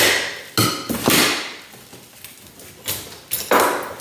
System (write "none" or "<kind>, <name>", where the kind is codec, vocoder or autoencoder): none